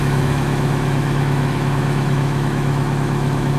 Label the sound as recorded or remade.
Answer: remade